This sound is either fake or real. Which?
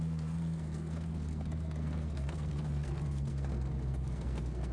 fake